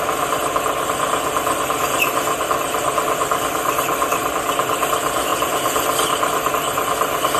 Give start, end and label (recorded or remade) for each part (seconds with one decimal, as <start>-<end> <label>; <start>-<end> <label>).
0.0-7.4 recorded